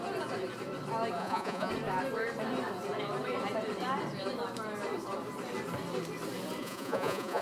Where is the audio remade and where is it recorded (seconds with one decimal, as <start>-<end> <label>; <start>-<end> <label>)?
0.0-1.2 recorded; 1.2-1.7 remade; 1.7-6.6 recorded; 6.6-7.4 remade